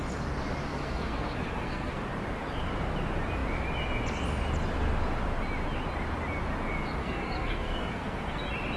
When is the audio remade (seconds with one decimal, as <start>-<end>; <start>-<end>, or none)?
0.7-2.0; 7.0-8.4

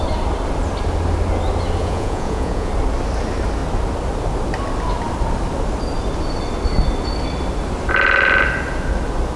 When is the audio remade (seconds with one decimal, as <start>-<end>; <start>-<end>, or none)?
1.8-2.7

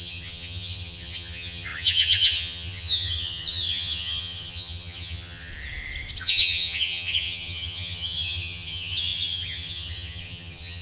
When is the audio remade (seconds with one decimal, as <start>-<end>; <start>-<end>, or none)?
0.0-5.5; 6.2-10.8

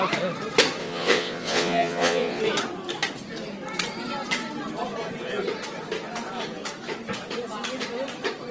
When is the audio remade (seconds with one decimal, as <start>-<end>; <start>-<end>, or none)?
0.8-2.4

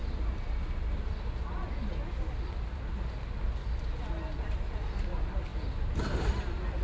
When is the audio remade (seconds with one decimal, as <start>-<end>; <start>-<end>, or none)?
none

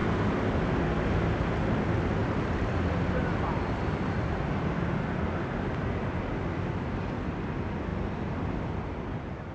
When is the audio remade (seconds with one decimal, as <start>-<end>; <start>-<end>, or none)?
2.2-6.2

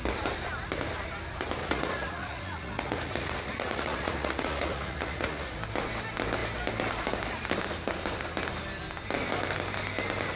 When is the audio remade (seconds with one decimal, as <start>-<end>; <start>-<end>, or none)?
1.6-5.6